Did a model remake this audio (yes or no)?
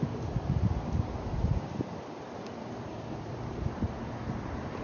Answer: no